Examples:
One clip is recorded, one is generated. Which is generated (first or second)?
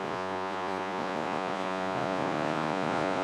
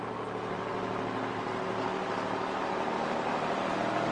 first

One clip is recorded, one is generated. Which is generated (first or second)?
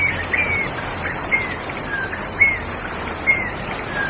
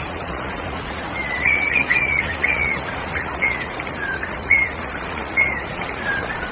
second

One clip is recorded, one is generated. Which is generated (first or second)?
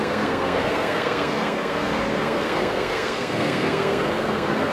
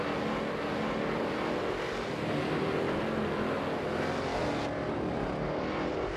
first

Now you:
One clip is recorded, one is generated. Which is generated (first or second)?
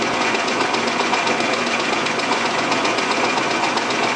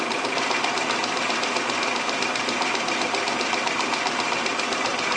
first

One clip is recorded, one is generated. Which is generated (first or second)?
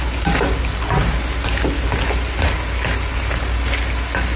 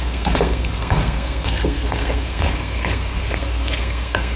second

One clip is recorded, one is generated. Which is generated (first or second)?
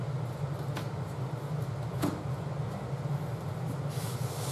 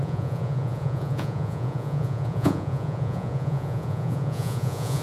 second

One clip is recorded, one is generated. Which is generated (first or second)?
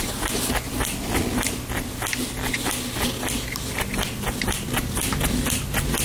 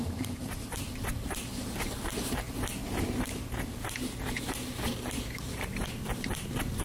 second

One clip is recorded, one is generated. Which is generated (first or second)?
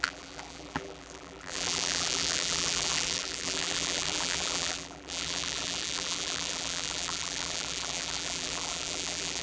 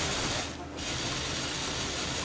first